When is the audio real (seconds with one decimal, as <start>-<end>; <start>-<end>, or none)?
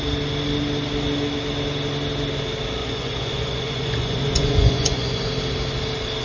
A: 0.0-2.8; 5.3-6.2